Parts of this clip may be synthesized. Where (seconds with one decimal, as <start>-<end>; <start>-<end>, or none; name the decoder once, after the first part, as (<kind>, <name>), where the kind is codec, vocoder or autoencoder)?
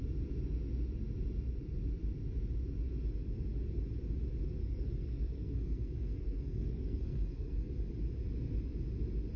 4.6-7.7 (codec, SNAC)